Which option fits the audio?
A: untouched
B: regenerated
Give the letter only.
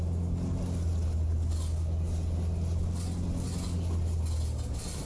A